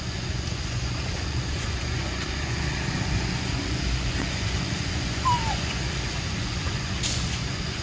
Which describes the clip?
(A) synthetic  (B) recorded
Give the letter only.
A